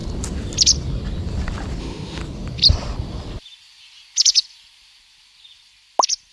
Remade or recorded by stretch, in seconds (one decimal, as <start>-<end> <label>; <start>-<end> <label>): 0.0-1.8 recorded; 1.8-2.2 remade; 2.2-6.3 recorded